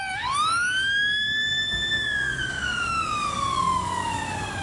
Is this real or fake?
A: fake